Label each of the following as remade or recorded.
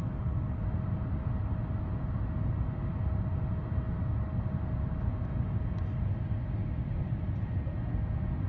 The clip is recorded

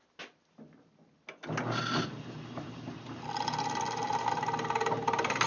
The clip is recorded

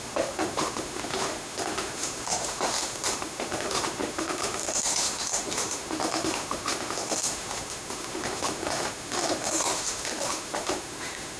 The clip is remade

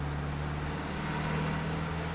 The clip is recorded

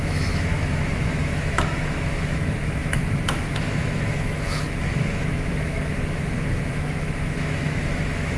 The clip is remade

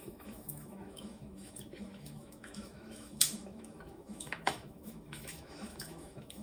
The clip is remade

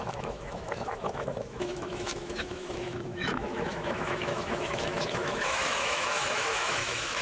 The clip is remade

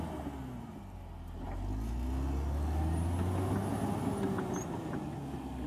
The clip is recorded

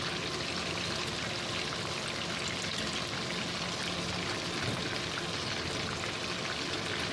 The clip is recorded